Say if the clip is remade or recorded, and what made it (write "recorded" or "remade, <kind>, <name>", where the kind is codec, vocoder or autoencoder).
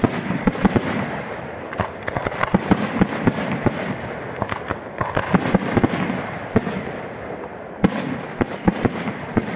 recorded